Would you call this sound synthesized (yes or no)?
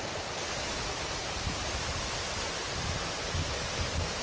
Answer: no